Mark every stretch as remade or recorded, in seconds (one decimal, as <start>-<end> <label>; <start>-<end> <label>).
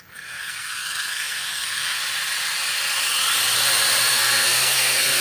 0.0-2.0 remade; 2.0-4.1 recorded; 4.1-5.2 remade